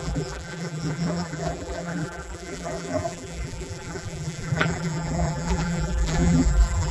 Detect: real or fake fake